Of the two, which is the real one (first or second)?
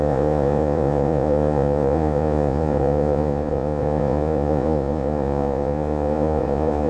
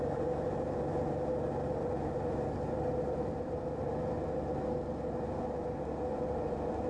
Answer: second